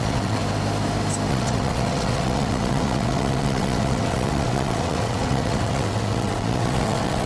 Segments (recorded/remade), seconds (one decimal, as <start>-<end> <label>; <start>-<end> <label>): 0.0-0.4 remade; 0.4-1.3 recorded; 1.3-7.3 remade

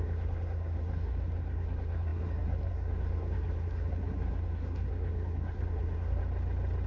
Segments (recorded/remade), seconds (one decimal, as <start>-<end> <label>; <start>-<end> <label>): 0.0-6.2 remade; 6.2-6.9 recorded

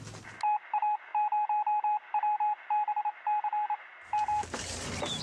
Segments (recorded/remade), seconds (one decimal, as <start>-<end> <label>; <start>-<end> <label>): 0.0-5.2 recorded

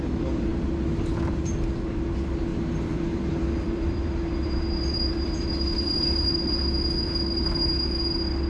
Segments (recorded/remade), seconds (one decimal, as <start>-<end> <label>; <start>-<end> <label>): 0.0-2.5 recorded; 2.5-6.3 remade; 6.3-8.5 recorded

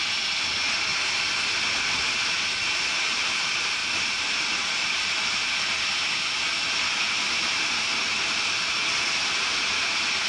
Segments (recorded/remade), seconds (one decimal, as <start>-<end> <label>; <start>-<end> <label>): 0.0-10.3 recorded

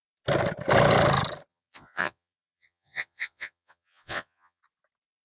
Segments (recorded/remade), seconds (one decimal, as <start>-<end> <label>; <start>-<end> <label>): 0.0-1.5 recorded; 1.5-4.6 remade; 4.6-5.2 recorded

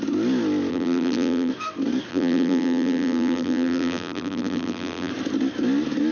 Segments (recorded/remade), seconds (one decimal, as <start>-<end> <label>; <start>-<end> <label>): 0.0-0.7 recorded; 0.7-1.5 remade; 1.5-2.1 recorded; 2.1-5.1 remade; 5.1-6.1 recorded

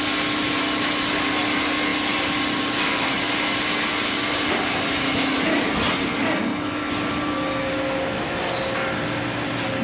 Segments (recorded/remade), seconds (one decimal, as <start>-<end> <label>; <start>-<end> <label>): 0.0-9.8 recorded